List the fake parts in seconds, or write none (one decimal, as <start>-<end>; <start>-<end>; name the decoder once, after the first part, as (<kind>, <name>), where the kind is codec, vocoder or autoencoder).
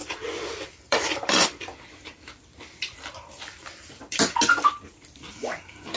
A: 0.0-6.0 (vocoder, BigVGAN v2)